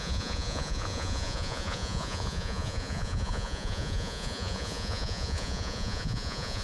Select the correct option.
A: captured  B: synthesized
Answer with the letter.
B